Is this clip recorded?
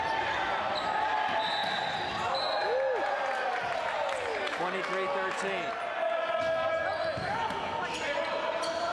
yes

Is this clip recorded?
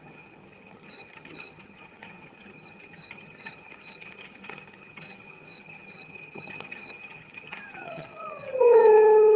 no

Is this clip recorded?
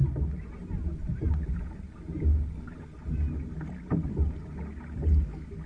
yes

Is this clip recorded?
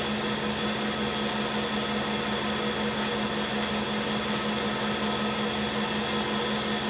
yes